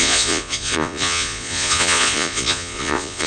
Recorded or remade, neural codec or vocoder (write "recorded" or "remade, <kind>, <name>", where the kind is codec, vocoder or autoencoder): remade, vocoder, Vocos